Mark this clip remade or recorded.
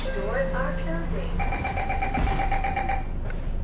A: recorded